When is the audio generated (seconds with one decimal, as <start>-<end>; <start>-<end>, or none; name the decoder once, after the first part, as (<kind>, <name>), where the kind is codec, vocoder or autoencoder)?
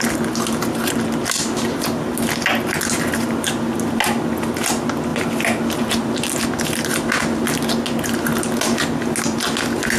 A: none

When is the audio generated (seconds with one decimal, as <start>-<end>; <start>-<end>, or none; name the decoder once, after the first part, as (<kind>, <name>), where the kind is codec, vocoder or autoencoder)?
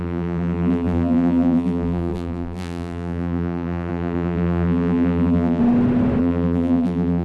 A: 0.0-5.6 (vocoder, BigVGAN v2); 6.2-7.2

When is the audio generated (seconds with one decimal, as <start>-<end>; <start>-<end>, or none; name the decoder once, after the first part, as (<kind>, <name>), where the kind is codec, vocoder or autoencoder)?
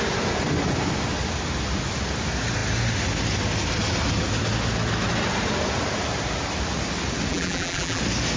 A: 7.3-8.0 (vocoder, BigVGAN v2)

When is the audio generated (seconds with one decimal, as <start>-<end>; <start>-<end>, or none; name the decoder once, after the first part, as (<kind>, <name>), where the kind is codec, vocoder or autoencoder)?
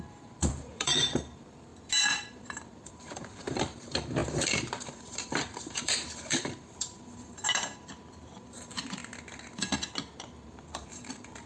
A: 0.0-1.7 (vocoder, BigVGAN v2); 2.2-9.0; 10.2-11.5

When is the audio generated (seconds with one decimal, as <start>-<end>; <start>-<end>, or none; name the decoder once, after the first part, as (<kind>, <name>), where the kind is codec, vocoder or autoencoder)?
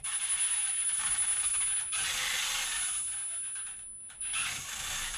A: 0.0-1.5 (vocoder, BigVGAN v2); 4.6-5.2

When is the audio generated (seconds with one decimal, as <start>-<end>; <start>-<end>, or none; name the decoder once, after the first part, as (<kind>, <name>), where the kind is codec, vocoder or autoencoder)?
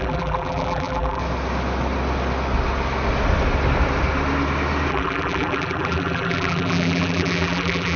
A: 0.0-1.2 (vocoder, BigVGAN v2); 4.9-8.0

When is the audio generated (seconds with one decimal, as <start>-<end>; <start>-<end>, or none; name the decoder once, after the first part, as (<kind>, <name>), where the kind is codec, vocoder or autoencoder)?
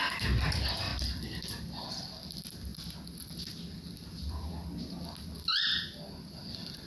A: 0.0-2.7 (vocoder, BigVGAN v2); 6.4-6.9